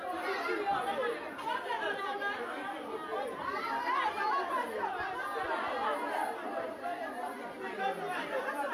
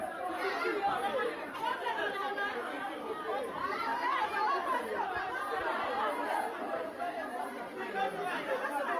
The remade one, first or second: second